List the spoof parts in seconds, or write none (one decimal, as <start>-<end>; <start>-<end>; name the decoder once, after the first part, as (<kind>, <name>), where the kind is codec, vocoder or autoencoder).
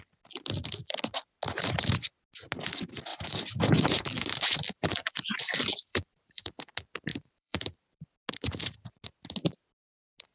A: 3.1-6.6 (vocoder, BigVGAN v2); 7.1-8.1